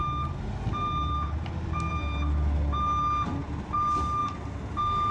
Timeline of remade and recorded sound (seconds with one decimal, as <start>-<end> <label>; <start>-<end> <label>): 0.0-5.1 recorded